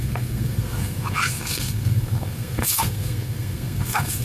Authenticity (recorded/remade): remade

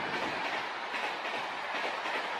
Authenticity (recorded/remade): recorded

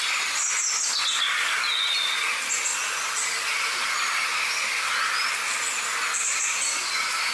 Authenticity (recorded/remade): recorded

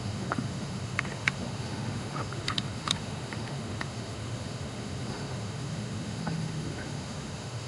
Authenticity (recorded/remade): remade